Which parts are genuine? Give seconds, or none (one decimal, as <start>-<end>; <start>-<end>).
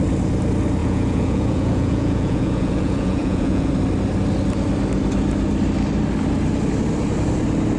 0.0-0.8; 3.7-7.8